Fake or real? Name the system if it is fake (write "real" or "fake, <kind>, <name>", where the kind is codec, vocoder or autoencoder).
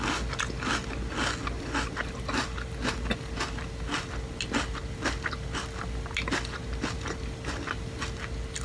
real